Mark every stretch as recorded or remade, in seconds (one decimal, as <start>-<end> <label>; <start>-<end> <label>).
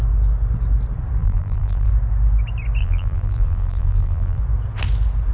0.0-1.2 recorded; 1.2-1.9 remade; 1.9-2.8 recorded; 2.8-4.4 remade; 4.4-5.3 recorded